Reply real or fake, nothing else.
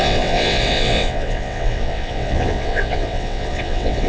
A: fake